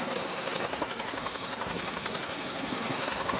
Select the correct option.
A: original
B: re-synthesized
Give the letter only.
B